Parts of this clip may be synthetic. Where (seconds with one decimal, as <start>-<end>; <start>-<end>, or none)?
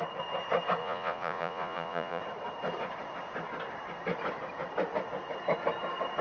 0.8-2.2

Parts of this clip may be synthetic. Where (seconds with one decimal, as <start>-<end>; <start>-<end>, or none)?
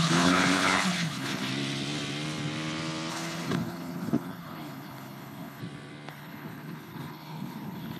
0.0-1.5; 3.1-5.6; 6.1-8.0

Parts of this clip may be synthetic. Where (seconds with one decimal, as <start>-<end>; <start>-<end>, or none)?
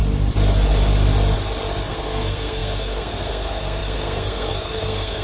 1.9-5.2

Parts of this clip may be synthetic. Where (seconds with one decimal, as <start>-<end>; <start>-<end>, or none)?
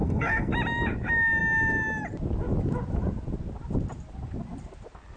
0.0-0.5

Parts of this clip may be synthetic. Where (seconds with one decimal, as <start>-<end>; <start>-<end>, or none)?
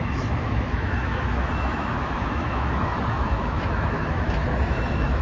0.0-5.2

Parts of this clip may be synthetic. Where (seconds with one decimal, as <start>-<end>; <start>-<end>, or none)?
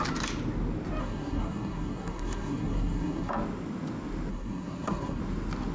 1.0-3.3; 4.3-5.2